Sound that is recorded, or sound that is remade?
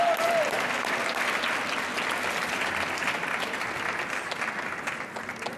recorded